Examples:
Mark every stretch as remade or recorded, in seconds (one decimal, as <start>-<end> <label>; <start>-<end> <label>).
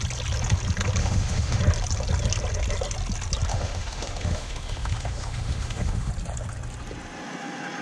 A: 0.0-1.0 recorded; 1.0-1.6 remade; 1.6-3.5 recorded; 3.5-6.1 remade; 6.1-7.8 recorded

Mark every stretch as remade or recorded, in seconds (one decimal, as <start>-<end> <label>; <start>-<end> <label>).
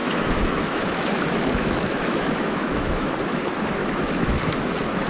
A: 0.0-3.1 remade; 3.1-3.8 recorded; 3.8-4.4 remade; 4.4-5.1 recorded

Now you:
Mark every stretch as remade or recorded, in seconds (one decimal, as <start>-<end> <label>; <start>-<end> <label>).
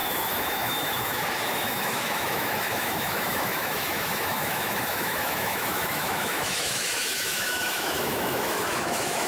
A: 0.0-9.3 remade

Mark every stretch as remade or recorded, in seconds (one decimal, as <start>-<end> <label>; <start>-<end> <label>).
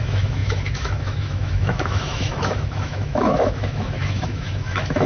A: 0.0-5.1 remade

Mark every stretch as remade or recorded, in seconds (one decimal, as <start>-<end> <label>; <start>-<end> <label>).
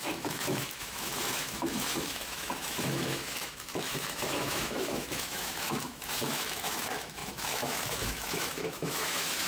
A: 0.0-9.5 remade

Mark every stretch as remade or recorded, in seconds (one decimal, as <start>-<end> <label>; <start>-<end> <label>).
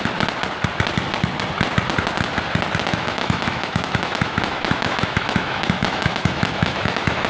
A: 0.0-2.9 recorded; 2.9-7.3 remade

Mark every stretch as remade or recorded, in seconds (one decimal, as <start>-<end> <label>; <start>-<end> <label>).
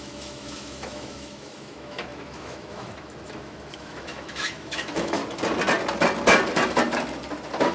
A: 0.0-5.2 remade; 5.2-7.7 recorded